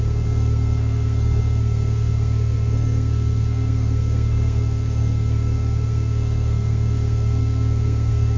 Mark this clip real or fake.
fake